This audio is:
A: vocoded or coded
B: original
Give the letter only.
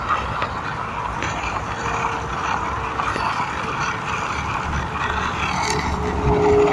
B